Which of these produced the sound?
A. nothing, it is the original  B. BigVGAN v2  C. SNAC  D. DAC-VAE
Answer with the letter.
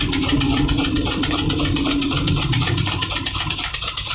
B